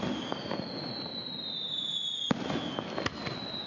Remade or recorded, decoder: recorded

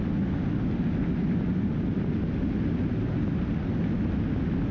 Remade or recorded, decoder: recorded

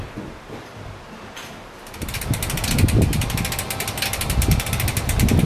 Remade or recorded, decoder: recorded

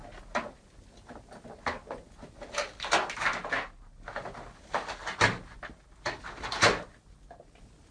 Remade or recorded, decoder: recorded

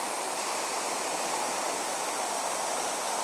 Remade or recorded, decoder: remade, vocoder, BigVGAN v2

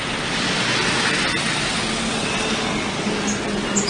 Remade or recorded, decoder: recorded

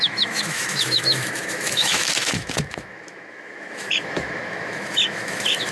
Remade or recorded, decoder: remade, autoencoder, DAC-VAE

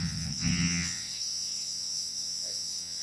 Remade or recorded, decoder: remade, vocoder, WaveNeXt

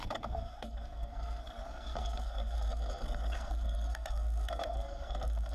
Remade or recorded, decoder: remade, codec, SNAC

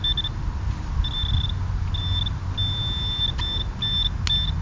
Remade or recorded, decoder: recorded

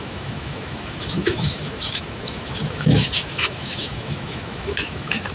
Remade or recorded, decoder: remade, autoencoder, DAC-VAE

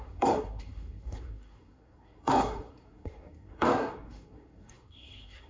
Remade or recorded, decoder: remade, codec, SNAC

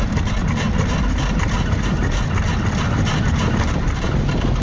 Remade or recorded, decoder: recorded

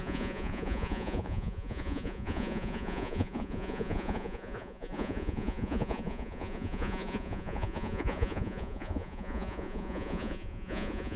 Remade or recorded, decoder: remade, vocoder, Vocos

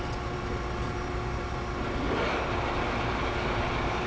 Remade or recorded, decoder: recorded